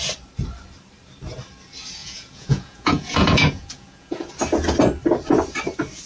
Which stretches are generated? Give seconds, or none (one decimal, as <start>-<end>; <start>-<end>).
2.0-4.3